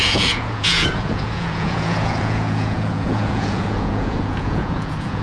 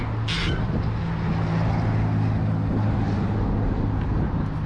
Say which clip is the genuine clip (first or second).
second